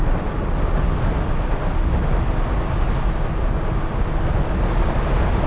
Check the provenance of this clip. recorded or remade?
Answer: recorded